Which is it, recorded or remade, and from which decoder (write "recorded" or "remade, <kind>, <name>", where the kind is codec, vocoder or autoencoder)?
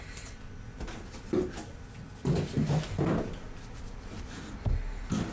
recorded